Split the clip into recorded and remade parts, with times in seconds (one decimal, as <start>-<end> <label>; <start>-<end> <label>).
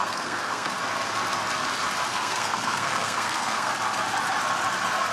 0.0-0.8 remade; 0.8-2.1 recorded; 2.1-3.7 remade; 3.7-5.1 recorded